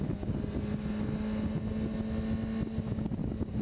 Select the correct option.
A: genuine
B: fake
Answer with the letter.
A